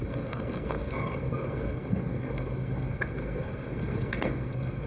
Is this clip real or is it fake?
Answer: fake